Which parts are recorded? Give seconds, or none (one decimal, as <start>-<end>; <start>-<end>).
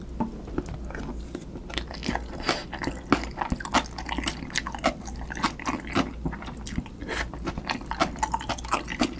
0.0-9.2